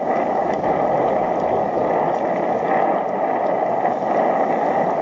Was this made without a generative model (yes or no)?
yes